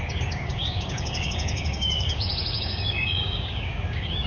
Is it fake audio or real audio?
fake